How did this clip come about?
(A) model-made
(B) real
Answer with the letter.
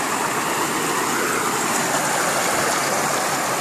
B